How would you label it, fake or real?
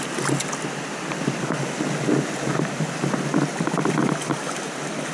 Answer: real